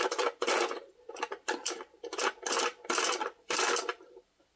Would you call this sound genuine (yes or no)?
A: no